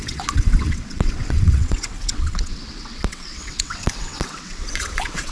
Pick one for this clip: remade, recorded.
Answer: remade